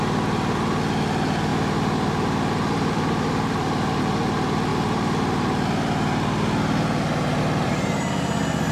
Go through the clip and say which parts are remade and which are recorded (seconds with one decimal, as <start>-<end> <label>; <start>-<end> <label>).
0.0-1.5 recorded; 1.5-4.0 remade; 4.0-8.7 recorded